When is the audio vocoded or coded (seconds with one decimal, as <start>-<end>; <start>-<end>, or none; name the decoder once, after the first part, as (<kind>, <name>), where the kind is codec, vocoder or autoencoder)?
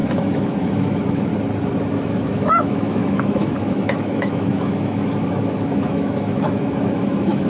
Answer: 0.0-1.3 (autoencoder, DAC-VAE); 1.9-7.5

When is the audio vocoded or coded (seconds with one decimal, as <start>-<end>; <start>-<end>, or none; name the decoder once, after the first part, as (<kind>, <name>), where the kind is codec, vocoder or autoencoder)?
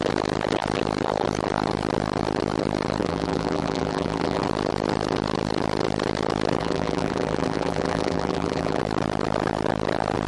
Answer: 3.0-4.4 (vocoder, BigVGAN v2); 6.6-8.8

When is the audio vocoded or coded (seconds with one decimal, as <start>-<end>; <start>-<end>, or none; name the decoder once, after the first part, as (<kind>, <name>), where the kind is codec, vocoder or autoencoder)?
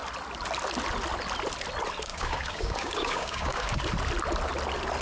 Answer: 2.1-3.8 (codec, DAC)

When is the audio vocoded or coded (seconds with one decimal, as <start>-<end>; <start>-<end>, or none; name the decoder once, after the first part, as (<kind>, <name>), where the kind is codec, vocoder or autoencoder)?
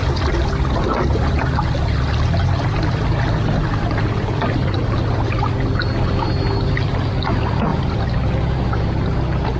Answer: none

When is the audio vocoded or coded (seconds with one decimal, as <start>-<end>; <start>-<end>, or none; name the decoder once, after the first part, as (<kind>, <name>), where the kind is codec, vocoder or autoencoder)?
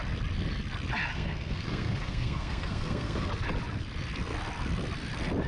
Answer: 1.1-3.3 (codec, SNAC)